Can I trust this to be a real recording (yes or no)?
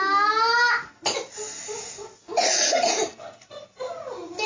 yes